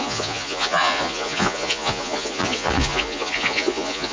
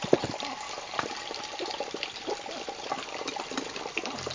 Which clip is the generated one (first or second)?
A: first